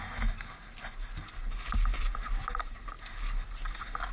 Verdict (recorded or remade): recorded